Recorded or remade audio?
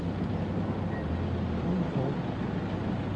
recorded